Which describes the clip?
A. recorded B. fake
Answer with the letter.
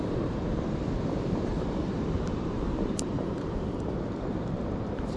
B